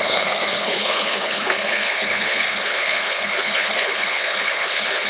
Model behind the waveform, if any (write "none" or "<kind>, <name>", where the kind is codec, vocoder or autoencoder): codec, HILCodec